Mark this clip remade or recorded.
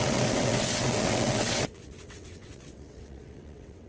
remade